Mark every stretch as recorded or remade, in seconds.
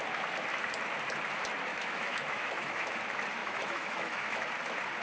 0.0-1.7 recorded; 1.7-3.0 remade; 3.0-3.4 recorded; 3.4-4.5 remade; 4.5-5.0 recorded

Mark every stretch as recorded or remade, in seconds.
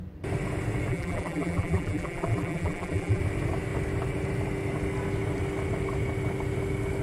0.0-0.9 recorded; 0.9-3.2 remade; 3.2-7.0 recorded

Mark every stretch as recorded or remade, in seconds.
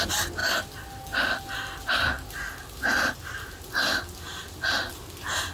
0.0-5.5 recorded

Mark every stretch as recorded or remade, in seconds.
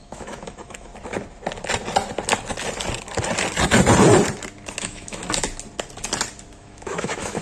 0.0-0.9 remade; 0.9-4.8 recorded; 4.8-5.2 remade; 5.2-6.6 recorded; 6.6-7.4 remade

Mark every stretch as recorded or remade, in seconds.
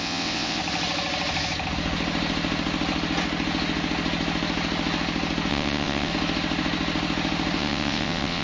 0.0-0.6 remade; 0.6-5.5 recorded; 5.5-6.1 remade; 6.1-7.6 recorded; 7.6-8.4 remade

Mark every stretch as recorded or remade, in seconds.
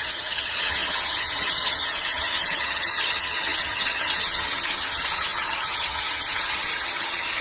0.0-7.4 remade